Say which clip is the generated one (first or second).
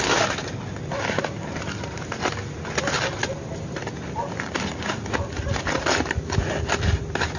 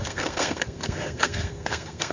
second